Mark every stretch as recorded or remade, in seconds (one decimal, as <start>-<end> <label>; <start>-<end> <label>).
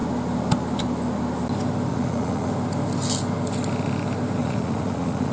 0.0-1.9 recorded; 1.9-2.5 remade; 2.5-4.4 recorded; 4.4-5.3 remade